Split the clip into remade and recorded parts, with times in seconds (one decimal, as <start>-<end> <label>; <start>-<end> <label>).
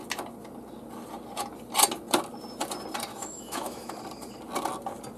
0.0-3.1 recorded; 3.1-3.9 remade; 3.9-5.2 recorded